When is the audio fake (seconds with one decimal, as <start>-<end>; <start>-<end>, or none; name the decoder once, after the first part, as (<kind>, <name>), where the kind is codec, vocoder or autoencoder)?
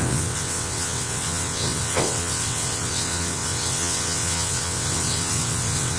0.0-6.0 (vocoder, WaveNeXt)